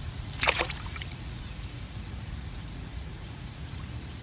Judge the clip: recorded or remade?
remade